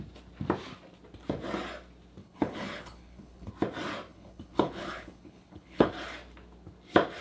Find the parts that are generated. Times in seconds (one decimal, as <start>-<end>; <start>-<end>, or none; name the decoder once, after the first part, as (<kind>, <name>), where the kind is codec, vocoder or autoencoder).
2.2-3.5 (codec, HILCodec); 4.1-5.9